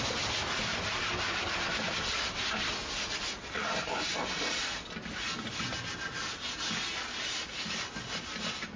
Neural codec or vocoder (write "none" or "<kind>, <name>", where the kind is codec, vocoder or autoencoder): none